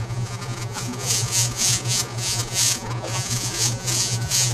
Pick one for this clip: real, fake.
fake